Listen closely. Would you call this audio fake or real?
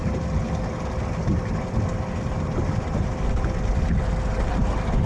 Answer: real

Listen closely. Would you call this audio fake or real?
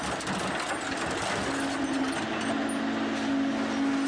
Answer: real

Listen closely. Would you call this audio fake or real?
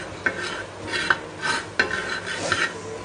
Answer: real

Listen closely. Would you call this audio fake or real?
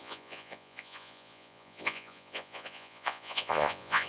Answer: fake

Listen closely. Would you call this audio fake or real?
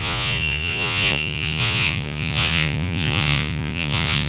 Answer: fake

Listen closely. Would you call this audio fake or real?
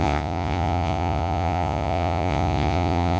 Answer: fake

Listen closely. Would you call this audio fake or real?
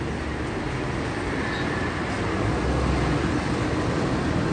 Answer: real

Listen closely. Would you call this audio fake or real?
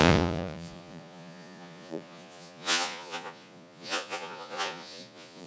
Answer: fake